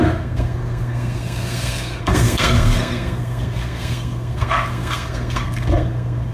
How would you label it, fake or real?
fake